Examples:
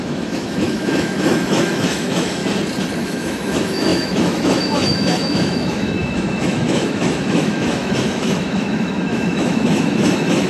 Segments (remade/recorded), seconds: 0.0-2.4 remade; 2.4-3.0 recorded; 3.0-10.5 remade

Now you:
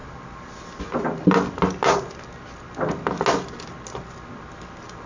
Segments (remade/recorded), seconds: 0.0-5.1 recorded

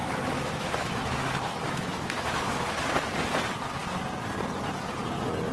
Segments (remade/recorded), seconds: 0.0-2.8 remade; 2.8-5.5 recorded

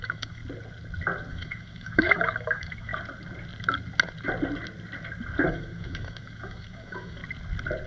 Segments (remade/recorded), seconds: 0.0-0.4 remade; 0.4-1.3 recorded; 1.3-2.9 remade; 2.9-5.5 recorded; 5.5-7.2 remade; 7.2-7.9 recorded

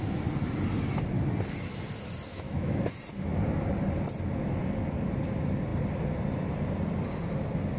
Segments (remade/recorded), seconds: 0.0-2.3 recorded; 2.3-2.9 remade; 2.9-7.8 recorded

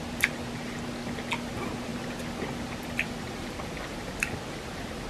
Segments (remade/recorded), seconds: 0.0-5.1 recorded

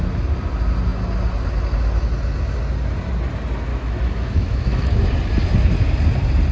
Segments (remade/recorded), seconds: 0.0-3.7 recorded; 3.7-5.0 remade; 5.0-6.5 recorded